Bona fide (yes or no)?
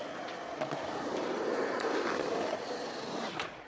no